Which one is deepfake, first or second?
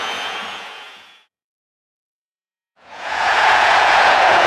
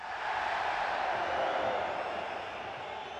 first